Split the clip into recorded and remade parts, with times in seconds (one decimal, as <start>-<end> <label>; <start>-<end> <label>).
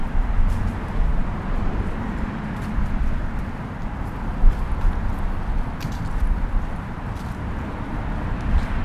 0.0-8.8 recorded